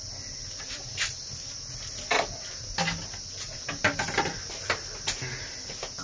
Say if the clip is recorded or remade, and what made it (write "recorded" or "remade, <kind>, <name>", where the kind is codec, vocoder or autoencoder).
recorded